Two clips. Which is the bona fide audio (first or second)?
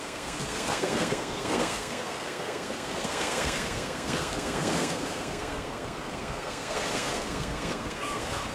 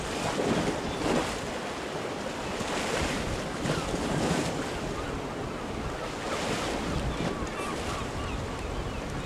second